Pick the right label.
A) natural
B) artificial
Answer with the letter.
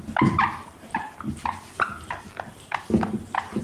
A